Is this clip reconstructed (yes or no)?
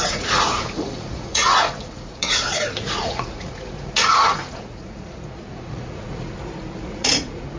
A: yes